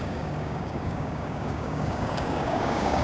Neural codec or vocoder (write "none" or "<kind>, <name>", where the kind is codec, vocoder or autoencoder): codec, DAC